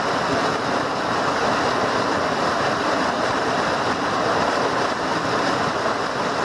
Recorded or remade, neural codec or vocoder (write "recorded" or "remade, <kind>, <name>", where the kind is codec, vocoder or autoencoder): recorded